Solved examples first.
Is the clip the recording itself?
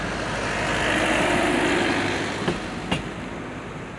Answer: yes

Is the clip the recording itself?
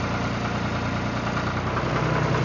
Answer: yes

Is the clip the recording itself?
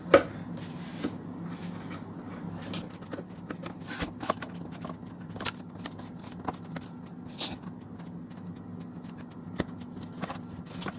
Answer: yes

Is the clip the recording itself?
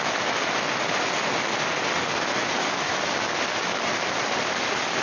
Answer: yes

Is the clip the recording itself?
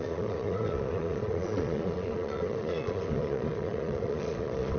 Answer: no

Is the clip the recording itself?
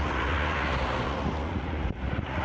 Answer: no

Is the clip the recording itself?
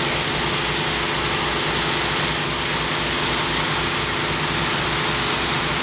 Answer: yes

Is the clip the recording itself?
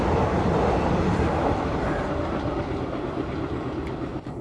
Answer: yes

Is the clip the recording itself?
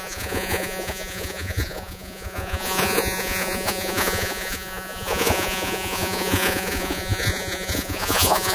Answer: no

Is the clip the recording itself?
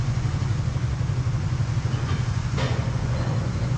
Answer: no